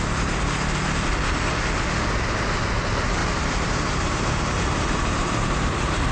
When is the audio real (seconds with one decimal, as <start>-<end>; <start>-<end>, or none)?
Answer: 0.0-3.2